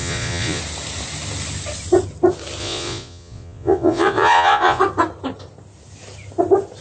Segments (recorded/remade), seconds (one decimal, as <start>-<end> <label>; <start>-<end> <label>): 0.0-0.6 remade; 0.6-2.6 recorded; 2.6-4.8 remade; 4.8-6.8 recorded